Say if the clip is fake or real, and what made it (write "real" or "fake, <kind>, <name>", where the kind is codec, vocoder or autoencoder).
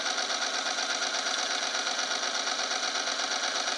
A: real